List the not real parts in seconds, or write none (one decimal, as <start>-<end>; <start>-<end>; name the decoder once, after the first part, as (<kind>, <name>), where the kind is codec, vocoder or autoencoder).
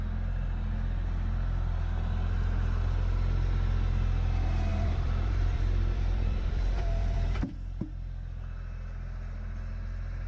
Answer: 4.7-7.4 (vocoder, BigVGAN v2)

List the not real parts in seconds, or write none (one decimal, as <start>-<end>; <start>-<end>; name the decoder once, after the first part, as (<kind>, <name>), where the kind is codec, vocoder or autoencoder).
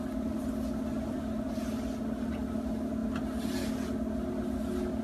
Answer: none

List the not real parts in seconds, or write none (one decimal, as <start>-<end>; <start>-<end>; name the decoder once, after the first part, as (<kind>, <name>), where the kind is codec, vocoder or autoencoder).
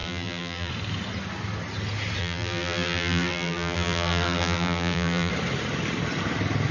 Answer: 0.0-0.7 (vocoder, BigVGAN v2); 2.2-5.3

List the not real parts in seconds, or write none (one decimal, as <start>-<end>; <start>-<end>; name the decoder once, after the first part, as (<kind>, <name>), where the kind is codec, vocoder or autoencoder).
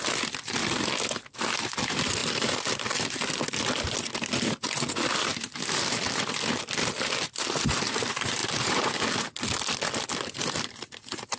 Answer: 2.2-3.4 (vocoder, BigVGAN v2)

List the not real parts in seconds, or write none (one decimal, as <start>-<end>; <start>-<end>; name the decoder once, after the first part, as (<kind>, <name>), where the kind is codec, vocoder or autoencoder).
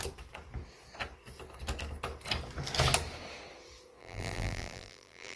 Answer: 4.0-5.4 (vocoder, BigVGAN v2)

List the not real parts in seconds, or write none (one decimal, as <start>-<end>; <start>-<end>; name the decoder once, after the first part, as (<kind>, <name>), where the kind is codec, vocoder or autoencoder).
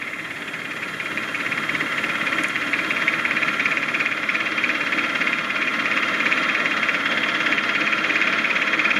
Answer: 0.0-9.0 (vocoder, BigVGAN v2)